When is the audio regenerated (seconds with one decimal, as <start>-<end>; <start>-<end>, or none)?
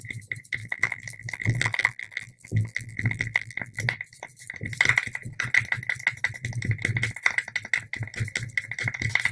0.6-3.8